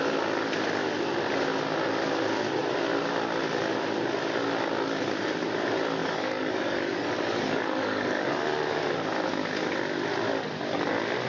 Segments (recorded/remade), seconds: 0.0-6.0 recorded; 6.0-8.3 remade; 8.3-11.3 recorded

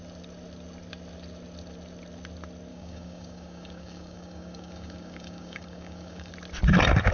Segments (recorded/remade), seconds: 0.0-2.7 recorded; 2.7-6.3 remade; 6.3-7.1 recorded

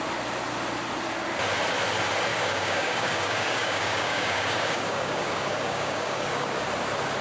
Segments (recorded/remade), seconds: 0.0-2.3 recorded; 2.3-6.5 remade; 6.5-7.2 recorded

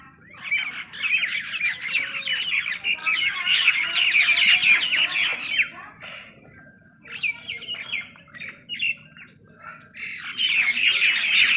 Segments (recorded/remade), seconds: 0.0-3.0 recorded; 3.0-3.7 remade; 3.7-11.6 recorded